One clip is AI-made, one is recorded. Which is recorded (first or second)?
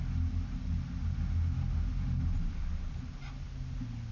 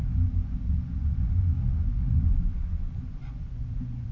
first